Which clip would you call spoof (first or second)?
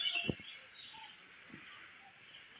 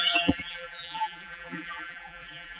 second